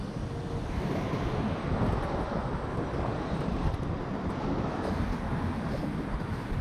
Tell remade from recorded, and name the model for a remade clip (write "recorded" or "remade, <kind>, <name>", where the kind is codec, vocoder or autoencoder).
recorded